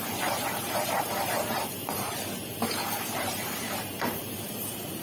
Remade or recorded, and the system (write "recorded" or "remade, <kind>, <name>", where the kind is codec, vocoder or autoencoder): remade, vocoder, BigVGAN v2